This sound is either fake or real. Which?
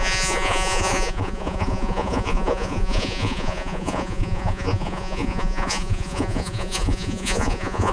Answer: fake